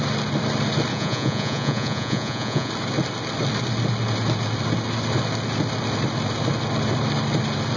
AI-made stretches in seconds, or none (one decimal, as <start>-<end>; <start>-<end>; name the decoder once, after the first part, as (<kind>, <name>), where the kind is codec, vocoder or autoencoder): 0.9-2.7 (vocoder, Vocos)